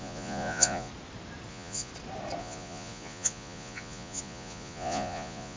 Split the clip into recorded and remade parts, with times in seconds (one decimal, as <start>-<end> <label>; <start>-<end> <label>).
0.0-0.9 remade; 0.9-1.5 recorded; 1.5-1.9 remade; 1.9-2.4 recorded; 2.4-5.6 remade